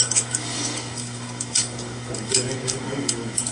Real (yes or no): no